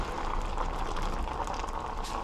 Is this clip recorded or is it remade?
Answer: recorded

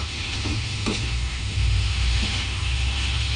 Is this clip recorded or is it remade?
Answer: remade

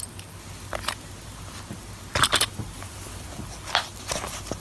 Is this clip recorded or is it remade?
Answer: recorded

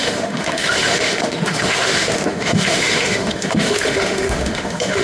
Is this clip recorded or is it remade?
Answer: remade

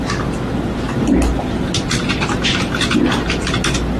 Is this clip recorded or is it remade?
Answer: recorded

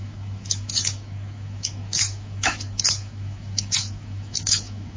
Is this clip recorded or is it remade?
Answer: remade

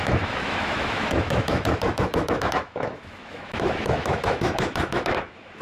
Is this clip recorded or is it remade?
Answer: remade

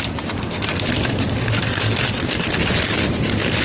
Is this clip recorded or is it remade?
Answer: recorded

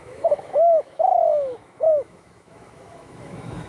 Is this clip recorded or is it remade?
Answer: remade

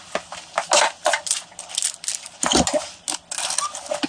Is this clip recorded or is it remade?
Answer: recorded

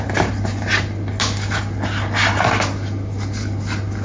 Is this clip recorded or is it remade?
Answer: recorded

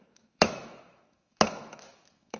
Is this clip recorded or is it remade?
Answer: remade